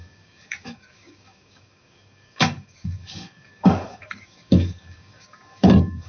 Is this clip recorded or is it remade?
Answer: remade